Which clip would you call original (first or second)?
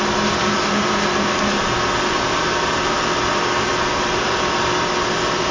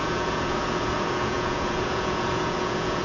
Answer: first